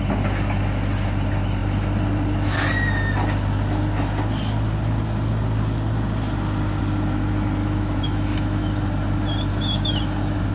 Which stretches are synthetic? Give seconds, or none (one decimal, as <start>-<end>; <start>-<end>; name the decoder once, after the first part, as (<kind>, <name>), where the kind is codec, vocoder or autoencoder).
7.6-8.7 (autoencoder, DAC-VAE); 9.5-10.0